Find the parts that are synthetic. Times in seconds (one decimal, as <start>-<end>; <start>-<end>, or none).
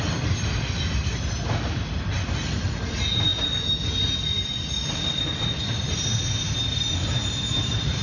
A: none